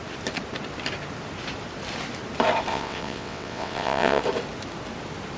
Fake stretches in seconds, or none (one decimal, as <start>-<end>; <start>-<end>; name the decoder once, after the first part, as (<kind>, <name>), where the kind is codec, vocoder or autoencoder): 2.7-4.2 (vocoder, WaveNeXt)